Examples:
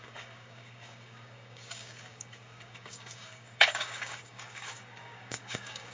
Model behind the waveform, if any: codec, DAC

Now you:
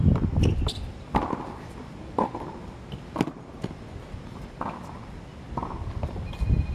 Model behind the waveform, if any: none